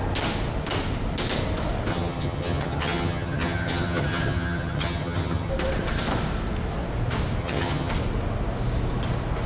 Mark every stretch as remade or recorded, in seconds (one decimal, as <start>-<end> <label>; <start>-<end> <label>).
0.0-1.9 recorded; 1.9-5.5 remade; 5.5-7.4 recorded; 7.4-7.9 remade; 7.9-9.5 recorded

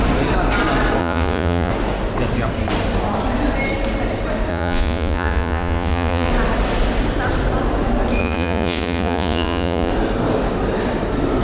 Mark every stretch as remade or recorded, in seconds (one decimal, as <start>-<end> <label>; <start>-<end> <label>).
0.0-1.0 recorded; 1.0-1.7 remade; 1.7-4.5 recorded; 4.5-6.3 remade; 6.3-8.2 recorded; 8.2-9.9 remade; 9.9-11.4 recorded

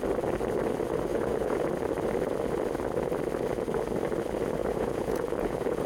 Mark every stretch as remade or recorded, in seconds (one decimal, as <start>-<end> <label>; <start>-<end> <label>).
0.0-1.1 recorded; 1.1-1.7 remade; 1.7-4.6 recorded; 4.6-5.9 remade

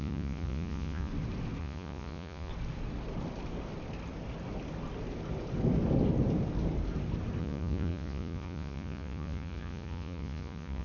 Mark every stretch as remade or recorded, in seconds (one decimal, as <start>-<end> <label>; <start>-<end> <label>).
0.0-1.1 remade; 1.1-1.6 recorded; 1.6-2.5 remade; 2.5-7.4 recorded; 7.4-10.8 remade